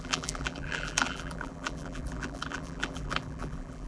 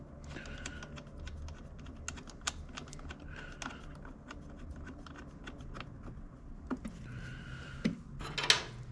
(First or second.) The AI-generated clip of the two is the first